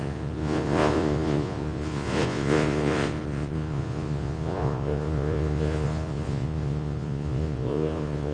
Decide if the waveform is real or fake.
fake